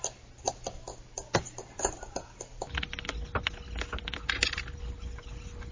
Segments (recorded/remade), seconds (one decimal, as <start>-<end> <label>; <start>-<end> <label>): 0.0-5.7 recorded